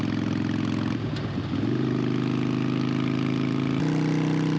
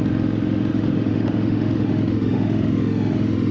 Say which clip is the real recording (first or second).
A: first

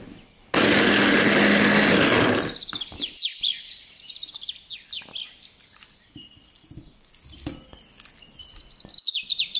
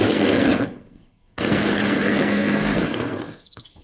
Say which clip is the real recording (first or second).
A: first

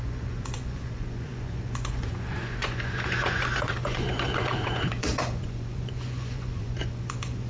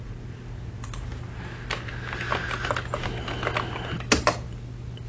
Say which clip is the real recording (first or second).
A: second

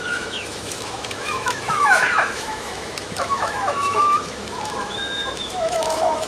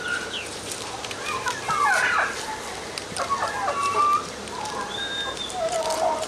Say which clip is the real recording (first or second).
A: second